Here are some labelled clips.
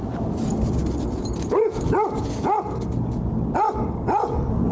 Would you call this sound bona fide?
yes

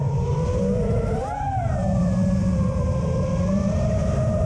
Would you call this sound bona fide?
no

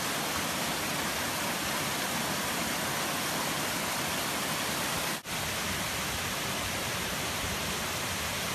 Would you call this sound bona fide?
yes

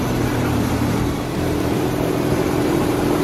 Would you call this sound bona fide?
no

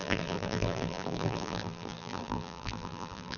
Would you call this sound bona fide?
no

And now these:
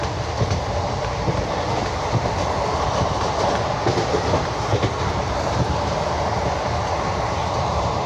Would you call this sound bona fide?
yes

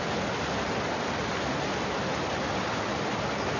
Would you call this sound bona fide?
yes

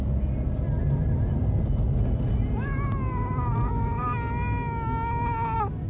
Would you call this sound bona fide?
yes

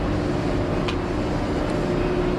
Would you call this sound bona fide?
yes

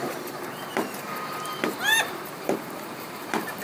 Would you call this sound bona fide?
no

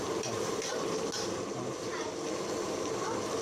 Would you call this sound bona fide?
yes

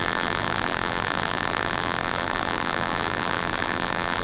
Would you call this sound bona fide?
no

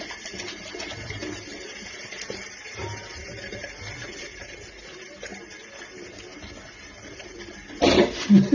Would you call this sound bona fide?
yes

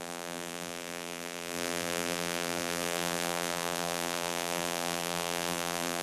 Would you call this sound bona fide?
no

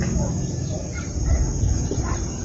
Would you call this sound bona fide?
no